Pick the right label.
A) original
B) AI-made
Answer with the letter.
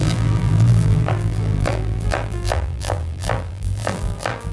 B